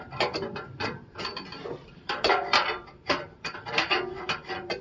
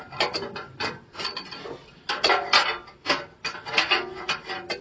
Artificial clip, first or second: first